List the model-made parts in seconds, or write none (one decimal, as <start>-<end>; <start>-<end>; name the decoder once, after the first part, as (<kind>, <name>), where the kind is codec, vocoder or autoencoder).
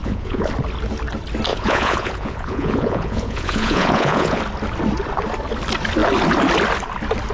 0.0-0.5 (vocoder, Vocos); 1.5-4.4